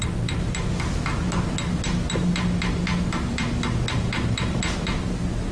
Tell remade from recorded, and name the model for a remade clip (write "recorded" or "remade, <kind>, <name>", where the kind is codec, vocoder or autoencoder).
recorded